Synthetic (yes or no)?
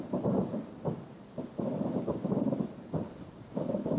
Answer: yes